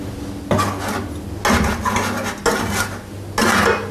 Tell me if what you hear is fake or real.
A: real